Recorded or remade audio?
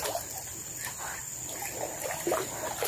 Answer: recorded